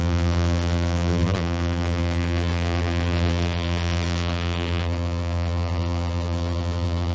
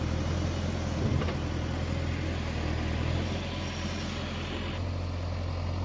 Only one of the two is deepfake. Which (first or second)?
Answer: first